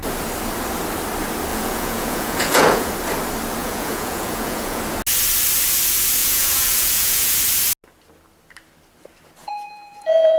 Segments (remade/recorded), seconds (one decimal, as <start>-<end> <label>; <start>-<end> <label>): 0.0-1.5 recorded; 1.5-2.9 remade; 2.9-3.6 recorded; 3.6-4.8 remade; 4.8-6.2 recorded; 6.2-7.4 remade; 7.4-9.4 recorded; 9.4-10.4 remade